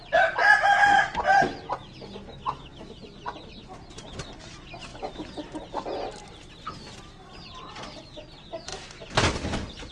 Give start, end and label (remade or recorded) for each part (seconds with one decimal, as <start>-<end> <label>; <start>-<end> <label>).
0.0-9.9 recorded